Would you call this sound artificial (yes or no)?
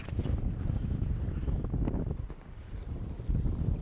no